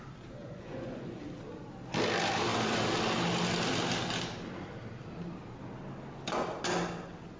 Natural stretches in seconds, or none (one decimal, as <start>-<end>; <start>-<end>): 0.0-0.4; 1.2-7.4